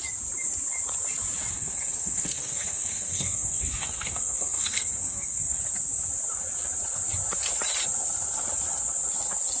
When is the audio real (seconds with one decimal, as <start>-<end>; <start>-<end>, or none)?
0.0-1.5; 5.6-9.6